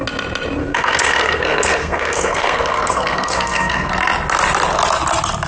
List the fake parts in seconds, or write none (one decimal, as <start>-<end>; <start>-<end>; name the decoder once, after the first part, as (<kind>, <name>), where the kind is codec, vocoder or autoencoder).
0.6-3.9 (codec, SNAC)